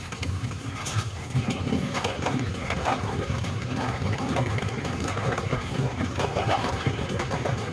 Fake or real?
fake